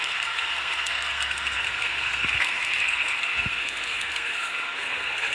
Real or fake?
fake